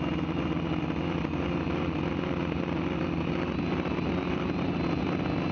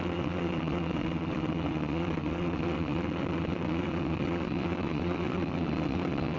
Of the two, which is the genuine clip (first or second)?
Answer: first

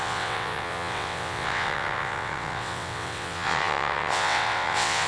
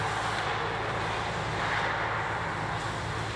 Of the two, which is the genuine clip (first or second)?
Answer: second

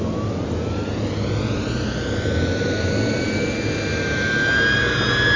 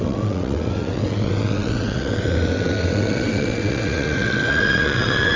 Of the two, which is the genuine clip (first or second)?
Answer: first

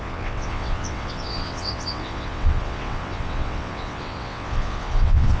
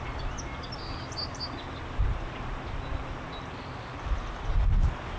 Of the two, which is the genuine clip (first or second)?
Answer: second